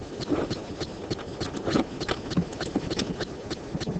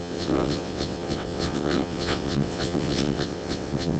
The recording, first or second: first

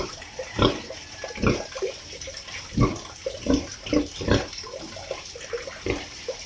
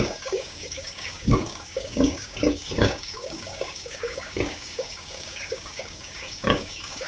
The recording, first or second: first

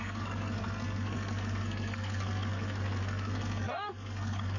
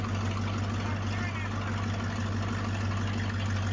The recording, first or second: second